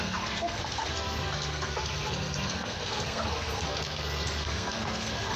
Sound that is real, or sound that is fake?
fake